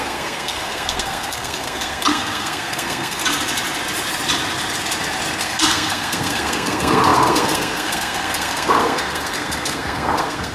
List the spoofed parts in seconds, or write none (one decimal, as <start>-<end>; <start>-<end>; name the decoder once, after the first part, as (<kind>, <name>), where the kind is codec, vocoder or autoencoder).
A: 0.0-3.2 (codec, SNAC); 5.4-10.5